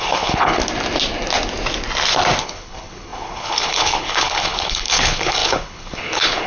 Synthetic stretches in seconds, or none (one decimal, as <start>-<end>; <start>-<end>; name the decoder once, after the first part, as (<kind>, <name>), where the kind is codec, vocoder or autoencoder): 0.0-0.6 (codec, HILCodec); 2.4-6.5